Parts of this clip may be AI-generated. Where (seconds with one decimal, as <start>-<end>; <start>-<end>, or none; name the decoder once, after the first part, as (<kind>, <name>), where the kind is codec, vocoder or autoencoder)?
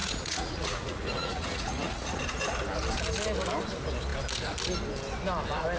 0.0-2.2 (vocoder, Vocos)